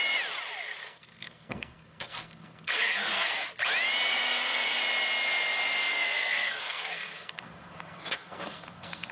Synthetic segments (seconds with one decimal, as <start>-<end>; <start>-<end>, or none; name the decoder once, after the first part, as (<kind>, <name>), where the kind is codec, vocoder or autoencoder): 0.8-3.5 (codec, SNAC); 4.1-4.8; 5.9-9.1